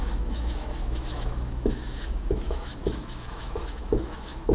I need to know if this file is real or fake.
fake